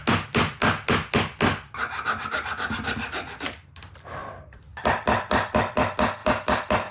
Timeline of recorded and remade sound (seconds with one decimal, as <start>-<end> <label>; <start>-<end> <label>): 0.0-4.2 recorded; 4.2-4.9 remade; 4.9-6.2 recorded; 6.2-6.9 remade